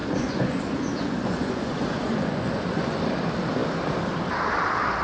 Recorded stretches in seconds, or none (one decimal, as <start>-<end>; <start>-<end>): 3.0-5.0